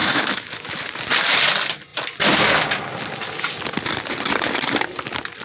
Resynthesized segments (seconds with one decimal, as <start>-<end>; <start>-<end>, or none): 0.0-0.8